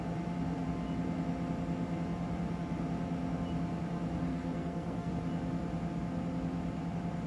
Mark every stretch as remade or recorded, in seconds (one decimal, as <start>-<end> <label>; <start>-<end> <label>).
0.0-4.3 recorded; 4.3-5.1 remade; 5.1-7.3 recorded